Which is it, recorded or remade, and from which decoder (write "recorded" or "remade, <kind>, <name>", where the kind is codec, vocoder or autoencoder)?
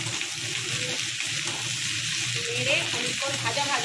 recorded